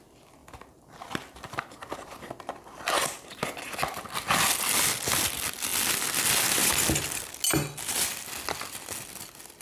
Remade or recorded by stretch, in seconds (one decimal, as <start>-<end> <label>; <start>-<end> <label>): 0.0-0.4 recorded; 0.4-2.3 remade; 2.3-9.6 recorded